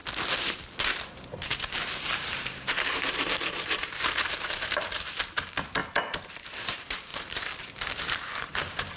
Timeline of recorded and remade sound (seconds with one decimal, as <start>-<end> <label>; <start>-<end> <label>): 0.0-1.1 recorded; 1.1-5.8 remade; 5.8-6.5 recorded; 6.5-9.0 remade